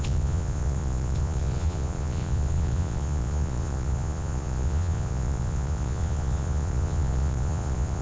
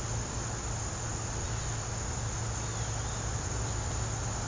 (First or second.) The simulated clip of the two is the first